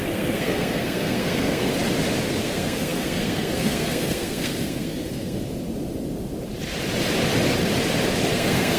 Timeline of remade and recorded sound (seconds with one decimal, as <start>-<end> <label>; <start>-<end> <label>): 0.0-1.7 remade; 1.7-2.4 recorded; 2.4-5.4 remade; 5.4-8.3 recorded; 8.3-8.8 remade